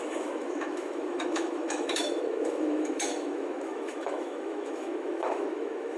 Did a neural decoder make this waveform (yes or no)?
yes